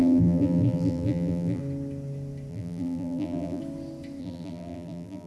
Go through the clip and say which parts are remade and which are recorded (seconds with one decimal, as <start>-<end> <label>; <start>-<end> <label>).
0.0-1.6 remade; 1.6-2.5 recorded; 2.5-3.6 remade; 3.6-4.2 recorded; 4.2-5.3 remade